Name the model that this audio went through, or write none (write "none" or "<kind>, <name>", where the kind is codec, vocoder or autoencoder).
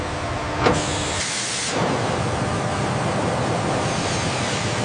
none